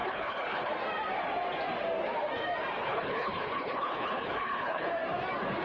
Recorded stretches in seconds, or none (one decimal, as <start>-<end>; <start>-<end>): 0.7-2.8; 4.9-5.6

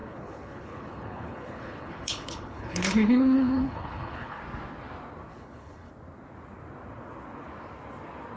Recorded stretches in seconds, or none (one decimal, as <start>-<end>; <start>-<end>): 4.4-5.3; 5.9-8.4

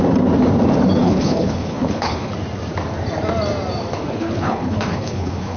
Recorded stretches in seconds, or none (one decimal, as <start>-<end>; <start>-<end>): 0.0-1.0; 2.3-4.1

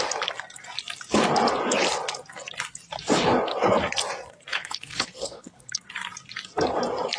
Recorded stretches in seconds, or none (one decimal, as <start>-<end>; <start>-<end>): 0.0-4.5; 5.7-7.2

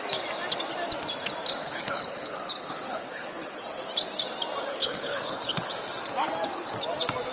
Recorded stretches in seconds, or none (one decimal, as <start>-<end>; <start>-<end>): 0.0-1.6; 3.6-4.7; 5.7-7.3